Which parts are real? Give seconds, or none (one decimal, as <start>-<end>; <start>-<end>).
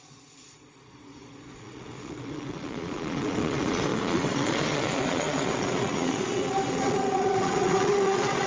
none